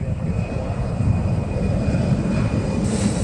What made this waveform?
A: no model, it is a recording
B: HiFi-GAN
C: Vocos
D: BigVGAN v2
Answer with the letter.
D